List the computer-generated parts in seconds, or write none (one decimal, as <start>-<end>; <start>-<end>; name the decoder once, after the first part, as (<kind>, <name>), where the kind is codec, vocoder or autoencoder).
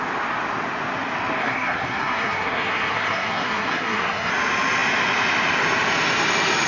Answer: 1.4-4.3 (codec, SNAC)